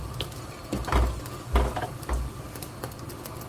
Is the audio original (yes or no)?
yes